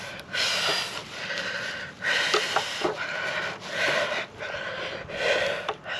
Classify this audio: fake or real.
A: real